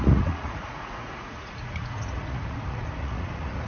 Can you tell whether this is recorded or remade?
remade